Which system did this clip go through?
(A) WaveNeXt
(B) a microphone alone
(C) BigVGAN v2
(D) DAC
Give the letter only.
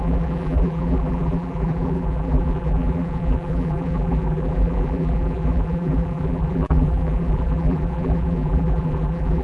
C